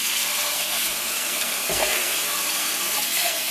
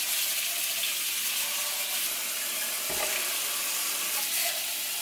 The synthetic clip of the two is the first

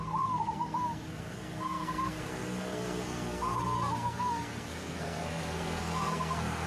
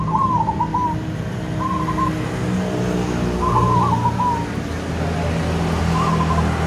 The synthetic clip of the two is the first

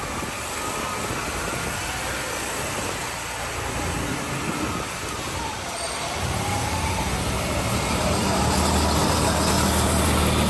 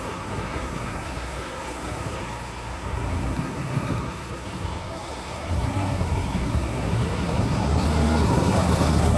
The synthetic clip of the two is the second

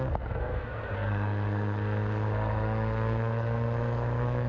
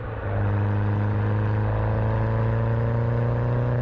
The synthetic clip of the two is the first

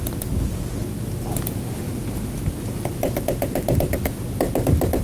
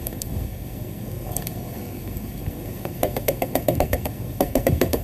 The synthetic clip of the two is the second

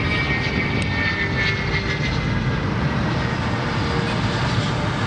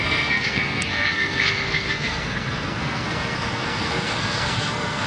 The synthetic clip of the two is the second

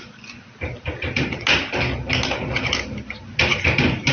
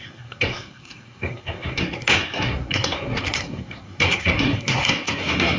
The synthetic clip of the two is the second